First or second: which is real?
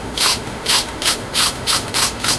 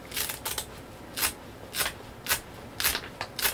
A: second